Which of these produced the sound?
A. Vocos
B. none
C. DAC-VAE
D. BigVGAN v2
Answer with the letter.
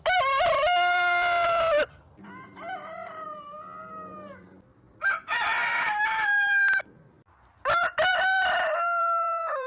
D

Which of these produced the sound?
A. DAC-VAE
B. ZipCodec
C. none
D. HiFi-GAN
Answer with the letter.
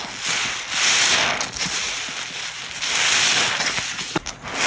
C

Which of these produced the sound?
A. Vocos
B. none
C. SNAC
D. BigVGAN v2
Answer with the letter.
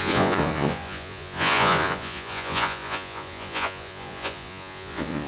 A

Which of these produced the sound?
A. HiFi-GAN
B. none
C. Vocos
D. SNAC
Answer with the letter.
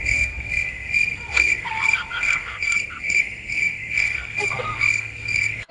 D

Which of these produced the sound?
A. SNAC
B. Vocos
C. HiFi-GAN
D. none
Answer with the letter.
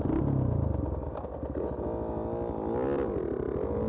D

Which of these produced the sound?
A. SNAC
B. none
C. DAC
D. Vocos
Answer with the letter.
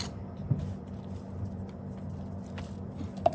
B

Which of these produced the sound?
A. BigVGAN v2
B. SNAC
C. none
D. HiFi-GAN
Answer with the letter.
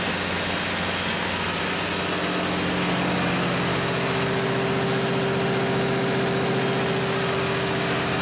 C